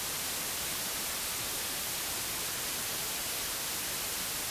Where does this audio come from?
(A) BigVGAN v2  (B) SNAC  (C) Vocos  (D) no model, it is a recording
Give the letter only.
D